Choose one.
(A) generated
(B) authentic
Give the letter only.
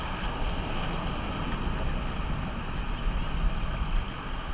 B